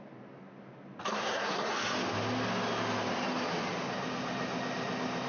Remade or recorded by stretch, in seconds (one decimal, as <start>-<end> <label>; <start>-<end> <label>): 0.0-1.1 recorded; 1.1-1.7 remade; 1.7-5.3 recorded